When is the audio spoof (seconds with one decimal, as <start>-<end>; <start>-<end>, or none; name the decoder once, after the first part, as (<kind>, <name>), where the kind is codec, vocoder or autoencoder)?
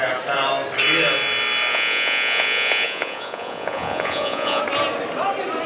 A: 1.7-4.6 (vocoder, Vocos)